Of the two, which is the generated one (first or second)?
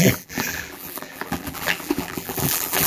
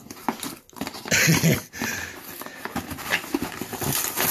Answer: first